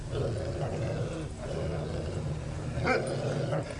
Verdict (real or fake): real